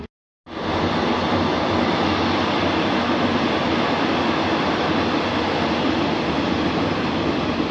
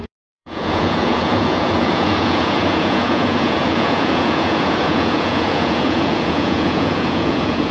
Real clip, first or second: first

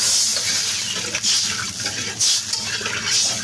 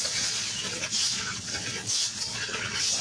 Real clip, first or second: first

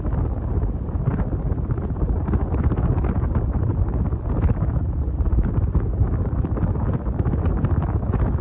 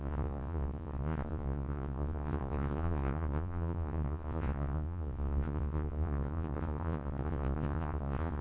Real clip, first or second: first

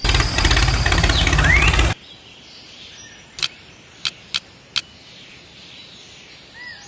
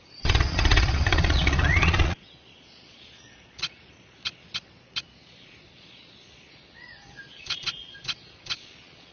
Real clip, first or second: first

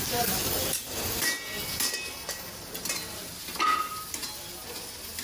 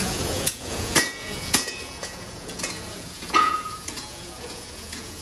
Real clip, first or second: first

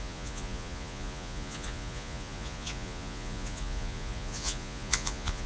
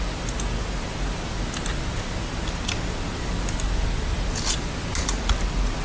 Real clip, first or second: second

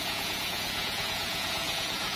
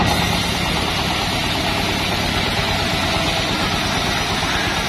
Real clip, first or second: second